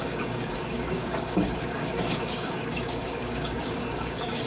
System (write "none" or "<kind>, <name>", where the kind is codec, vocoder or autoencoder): codec, DAC